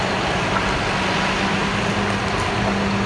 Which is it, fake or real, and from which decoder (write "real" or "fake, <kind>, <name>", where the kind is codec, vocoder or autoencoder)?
real